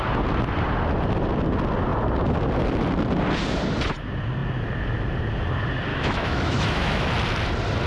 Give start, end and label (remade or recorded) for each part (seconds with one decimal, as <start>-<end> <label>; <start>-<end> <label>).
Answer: 0.0-5.9 recorded; 5.9-7.1 remade; 7.1-7.9 recorded